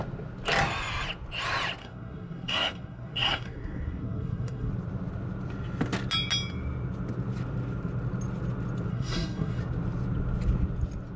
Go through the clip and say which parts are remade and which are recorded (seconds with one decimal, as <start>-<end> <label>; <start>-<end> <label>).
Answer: 0.0-1.8 recorded; 1.8-4.7 remade; 4.7-8.9 recorded; 8.9-9.6 remade; 9.6-11.2 recorded